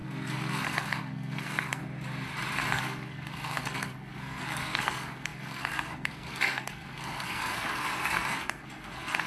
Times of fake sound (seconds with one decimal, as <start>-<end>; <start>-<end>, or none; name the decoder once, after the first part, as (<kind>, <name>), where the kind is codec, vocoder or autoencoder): 0.0-1.8 (codec, SNAC); 2.7-9.3